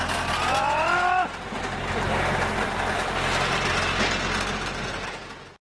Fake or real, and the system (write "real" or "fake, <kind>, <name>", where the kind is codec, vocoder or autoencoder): real